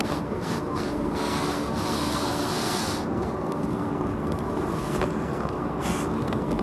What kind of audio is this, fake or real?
fake